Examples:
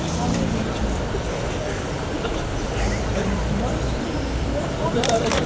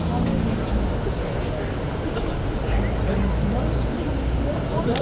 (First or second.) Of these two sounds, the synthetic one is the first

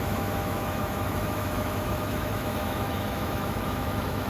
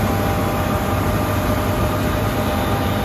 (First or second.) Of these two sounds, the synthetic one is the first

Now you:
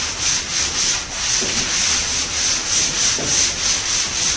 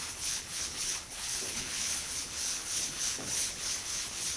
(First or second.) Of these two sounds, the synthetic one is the second